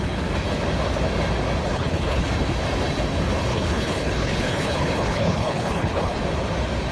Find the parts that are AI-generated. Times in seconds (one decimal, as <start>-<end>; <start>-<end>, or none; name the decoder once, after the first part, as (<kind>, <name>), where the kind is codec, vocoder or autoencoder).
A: 1.7-2.3 (codec, HILCodec); 3.5-6.2